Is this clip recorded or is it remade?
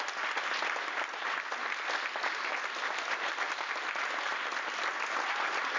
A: recorded